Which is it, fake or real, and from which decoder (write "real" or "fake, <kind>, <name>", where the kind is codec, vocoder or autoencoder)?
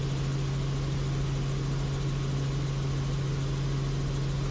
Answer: real